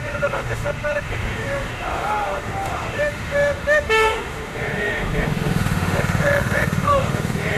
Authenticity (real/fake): fake